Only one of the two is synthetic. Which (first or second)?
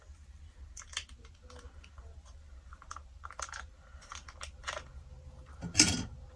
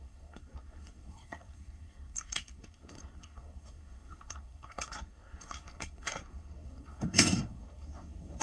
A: second